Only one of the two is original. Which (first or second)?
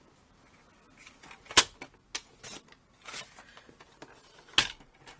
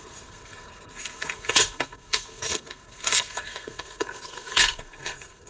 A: first